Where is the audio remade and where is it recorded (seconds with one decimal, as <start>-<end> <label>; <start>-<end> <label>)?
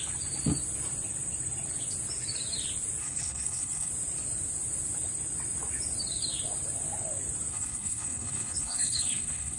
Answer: 0.0-3.0 recorded; 3.0-3.9 remade; 3.9-7.5 recorded; 7.5-9.6 remade